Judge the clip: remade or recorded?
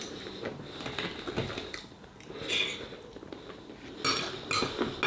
recorded